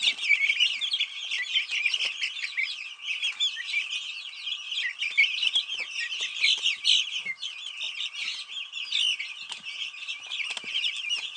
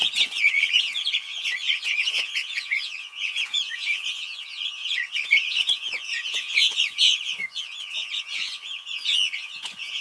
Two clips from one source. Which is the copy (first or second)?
second